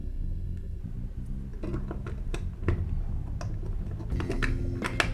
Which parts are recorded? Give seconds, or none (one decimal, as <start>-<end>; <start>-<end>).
0.8-5.1